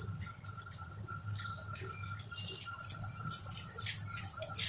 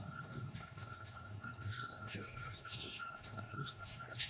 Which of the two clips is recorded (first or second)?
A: first